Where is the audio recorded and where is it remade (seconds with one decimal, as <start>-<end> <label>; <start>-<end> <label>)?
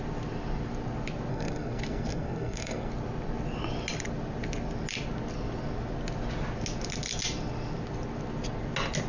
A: 0.0-1.3 recorded; 1.3-2.9 remade; 2.9-9.1 recorded